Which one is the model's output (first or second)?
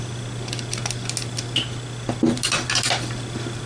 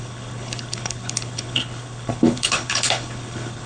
second